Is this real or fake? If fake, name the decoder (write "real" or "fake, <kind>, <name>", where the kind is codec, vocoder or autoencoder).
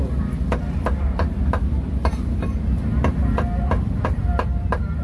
real